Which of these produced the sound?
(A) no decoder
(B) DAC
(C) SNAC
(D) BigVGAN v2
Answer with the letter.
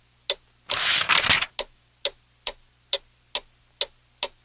A